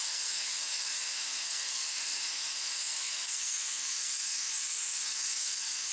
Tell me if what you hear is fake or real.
fake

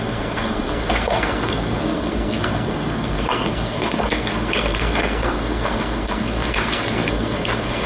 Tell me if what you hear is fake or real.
fake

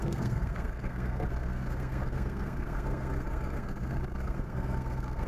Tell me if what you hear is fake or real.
fake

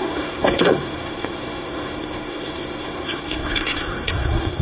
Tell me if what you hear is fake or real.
fake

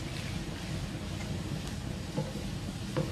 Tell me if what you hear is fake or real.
real